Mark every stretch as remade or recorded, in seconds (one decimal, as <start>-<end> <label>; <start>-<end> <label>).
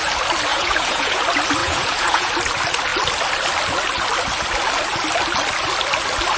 0.0-0.5 recorded; 0.5-1.2 remade; 1.2-1.6 recorded; 1.6-2.3 remade; 2.3-6.4 recorded